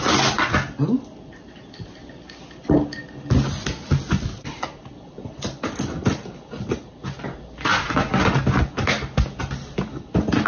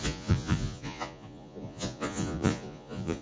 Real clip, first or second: first